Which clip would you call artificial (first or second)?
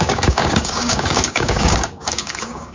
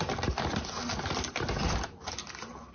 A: first